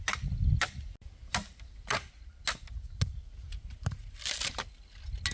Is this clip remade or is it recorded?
recorded